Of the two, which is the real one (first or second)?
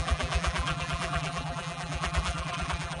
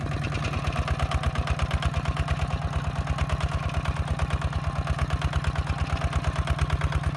second